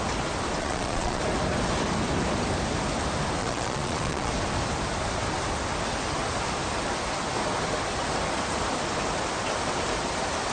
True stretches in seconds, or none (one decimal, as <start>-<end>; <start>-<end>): 0.0-0.6; 1.2-3.4; 4.3-10.5